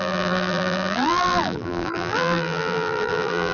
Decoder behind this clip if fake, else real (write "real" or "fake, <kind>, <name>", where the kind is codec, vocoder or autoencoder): fake, vocoder, BigVGAN v2